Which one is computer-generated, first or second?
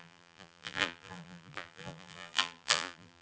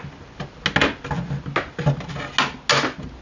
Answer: first